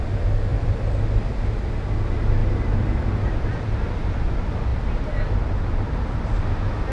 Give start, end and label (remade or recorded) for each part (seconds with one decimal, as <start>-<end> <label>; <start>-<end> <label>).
0.0-0.5 recorded; 0.5-1.6 remade; 1.6-2.4 recorded; 2.4-4.3 remade; 4.3-4.7 recorded; 4.7-6.4 remade; 6.4-6.9 recorded